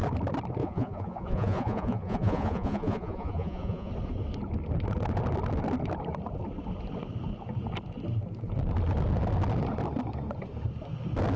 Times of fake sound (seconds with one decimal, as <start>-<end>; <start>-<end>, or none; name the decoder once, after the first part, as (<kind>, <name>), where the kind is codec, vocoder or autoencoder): 0.6-3.9 (vocoder, Vocos)